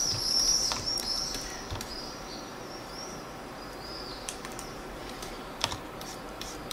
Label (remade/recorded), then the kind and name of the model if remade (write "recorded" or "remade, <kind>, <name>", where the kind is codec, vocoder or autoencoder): remade, vocoder, BigVGAN v2